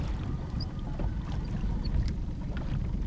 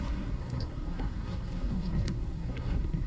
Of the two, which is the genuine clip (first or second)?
first